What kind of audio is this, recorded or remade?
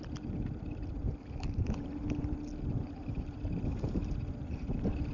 recorded